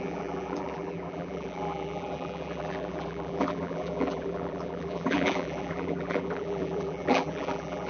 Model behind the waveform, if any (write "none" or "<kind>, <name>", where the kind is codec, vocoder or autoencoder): vocoder, BigVGAN v2